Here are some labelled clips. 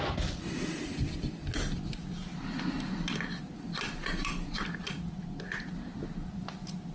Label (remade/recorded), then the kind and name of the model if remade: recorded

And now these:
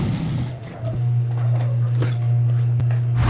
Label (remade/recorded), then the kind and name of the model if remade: recorded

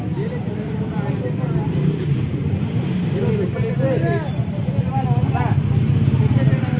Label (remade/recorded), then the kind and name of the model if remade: recorded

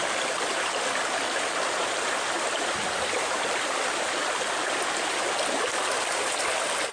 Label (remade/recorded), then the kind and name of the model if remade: recorded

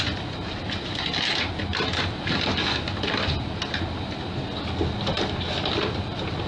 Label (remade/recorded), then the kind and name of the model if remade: recorded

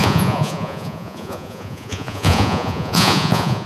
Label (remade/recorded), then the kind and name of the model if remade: remade, vocoder, Vocos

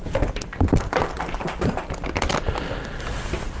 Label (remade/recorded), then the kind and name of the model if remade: recorded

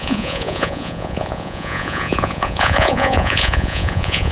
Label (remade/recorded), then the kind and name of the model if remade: remade, vocoder, Vocos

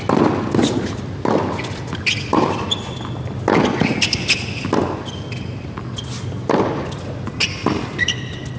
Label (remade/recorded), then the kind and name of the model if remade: recorded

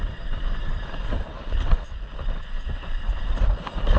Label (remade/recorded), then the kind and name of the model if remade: recorded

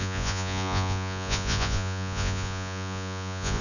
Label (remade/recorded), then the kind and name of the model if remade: remade, vocoder, Vocos